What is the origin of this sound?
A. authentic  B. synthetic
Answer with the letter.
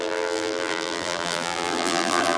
B